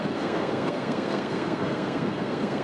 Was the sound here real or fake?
fake